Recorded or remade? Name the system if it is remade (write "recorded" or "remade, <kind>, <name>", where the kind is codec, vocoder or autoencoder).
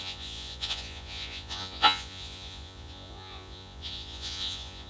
remade, vocoder, Vocos